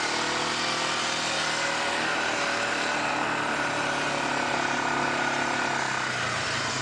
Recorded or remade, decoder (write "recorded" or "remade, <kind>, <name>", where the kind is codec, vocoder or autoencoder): recorded